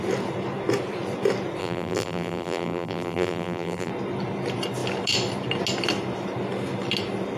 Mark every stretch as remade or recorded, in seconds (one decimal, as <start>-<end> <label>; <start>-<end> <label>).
0.0-1.6 recorded; 1.6-3.9 remade; 3.9-7.4 recorded